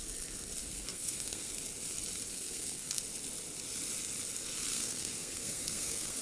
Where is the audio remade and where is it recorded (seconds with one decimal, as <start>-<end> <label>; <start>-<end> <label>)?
0.0-0.6 recorded; 0.6-1.5 remade; 1.5-2.3 recorded; 2.3-3.0 remade; 3.0-4.7 recorded; 4.7-6.2 remade